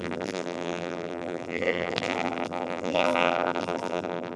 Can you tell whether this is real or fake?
fake